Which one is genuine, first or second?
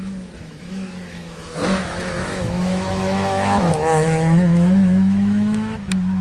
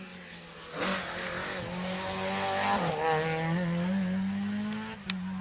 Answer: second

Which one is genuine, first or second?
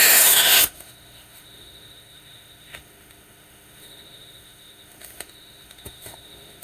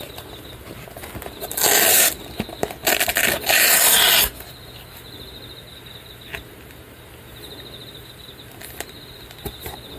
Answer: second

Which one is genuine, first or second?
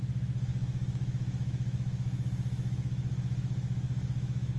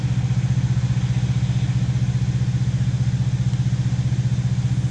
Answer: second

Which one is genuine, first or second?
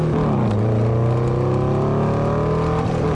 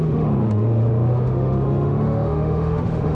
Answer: first